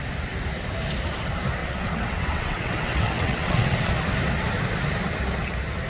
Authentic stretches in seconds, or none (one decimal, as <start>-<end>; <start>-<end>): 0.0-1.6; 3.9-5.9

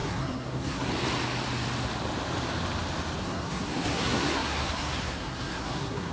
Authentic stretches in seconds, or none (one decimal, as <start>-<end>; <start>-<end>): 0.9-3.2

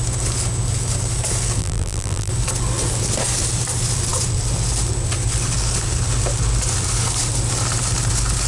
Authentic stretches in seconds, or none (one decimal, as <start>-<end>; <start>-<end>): 0.0-1.6; 2.3-8.5

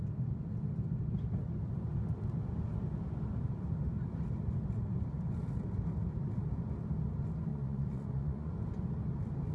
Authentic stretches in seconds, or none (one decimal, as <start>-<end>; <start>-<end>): 0.0-7.5; 8.5-9.5

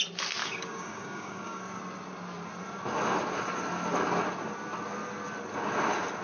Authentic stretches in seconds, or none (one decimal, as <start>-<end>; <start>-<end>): 0.0-0.4; 1.6-6.2